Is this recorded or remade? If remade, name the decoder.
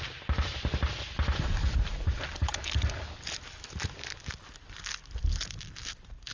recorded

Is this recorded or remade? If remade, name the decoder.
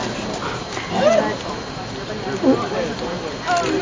recorded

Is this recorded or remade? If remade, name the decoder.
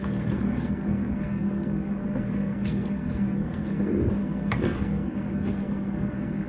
remade, codec, SNAC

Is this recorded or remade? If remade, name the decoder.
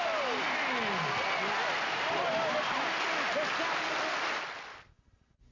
recorded